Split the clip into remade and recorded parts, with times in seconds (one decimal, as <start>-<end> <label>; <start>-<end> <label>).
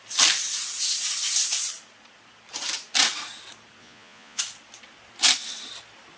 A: 0.0-3.8 recorded; 3.8-4.4 remade; 4.4-6.2 recorded